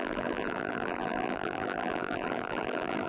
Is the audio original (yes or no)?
no